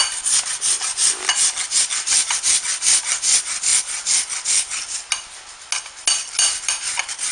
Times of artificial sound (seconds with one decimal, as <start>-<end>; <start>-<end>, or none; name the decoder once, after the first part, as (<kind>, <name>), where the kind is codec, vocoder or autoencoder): none